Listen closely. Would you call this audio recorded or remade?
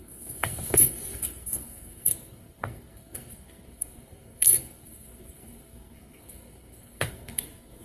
remade